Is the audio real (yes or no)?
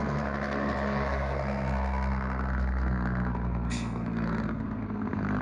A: no